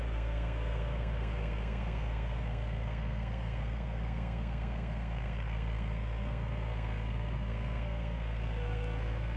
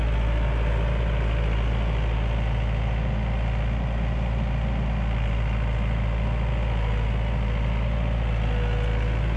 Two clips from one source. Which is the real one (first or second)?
second